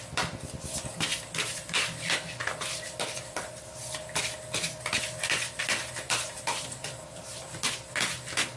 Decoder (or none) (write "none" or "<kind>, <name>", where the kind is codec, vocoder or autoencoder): none